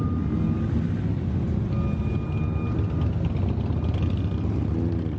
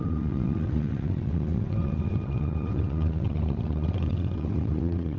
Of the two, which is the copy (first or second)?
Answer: second